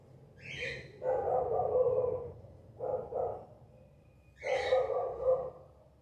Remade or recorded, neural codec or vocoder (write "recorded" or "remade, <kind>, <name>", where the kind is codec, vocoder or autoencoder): recorded